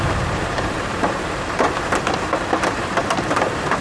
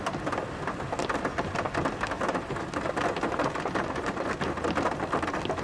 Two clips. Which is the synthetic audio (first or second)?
first